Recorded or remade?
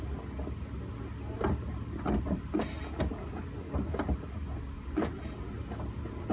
recorded